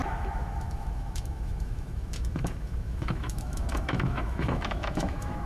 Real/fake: fake